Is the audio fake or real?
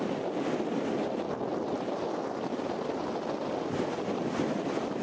real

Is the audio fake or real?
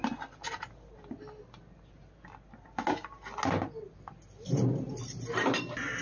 real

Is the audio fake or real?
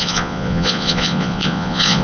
fake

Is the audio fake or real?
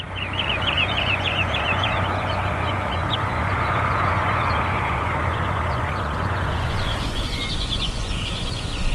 fake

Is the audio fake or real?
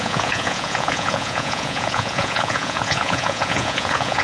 fake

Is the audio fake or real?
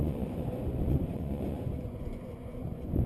fake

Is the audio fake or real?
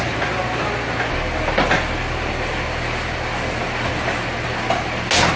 real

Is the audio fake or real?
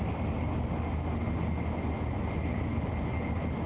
real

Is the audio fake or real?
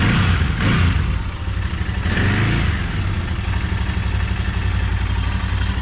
real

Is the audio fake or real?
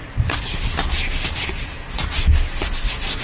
real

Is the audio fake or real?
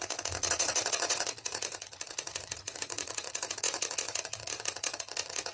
fake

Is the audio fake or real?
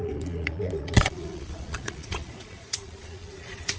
fake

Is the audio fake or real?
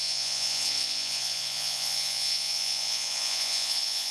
fake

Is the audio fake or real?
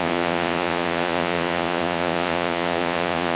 fake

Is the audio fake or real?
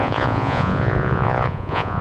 fake